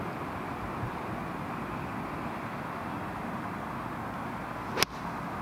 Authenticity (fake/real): real